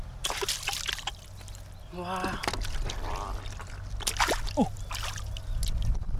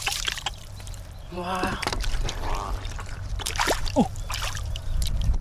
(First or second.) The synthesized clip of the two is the second